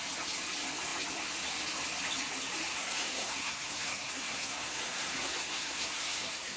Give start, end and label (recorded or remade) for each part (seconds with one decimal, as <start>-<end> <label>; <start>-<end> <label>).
0.0-2.7 recorded; 2.7-6.6 remade